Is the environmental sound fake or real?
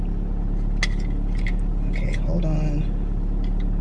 real